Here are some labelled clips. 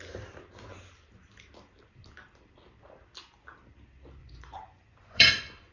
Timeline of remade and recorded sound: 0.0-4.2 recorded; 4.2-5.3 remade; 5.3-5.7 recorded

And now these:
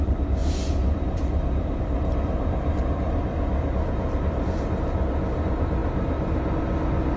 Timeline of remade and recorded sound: 0.0-7.2 recorded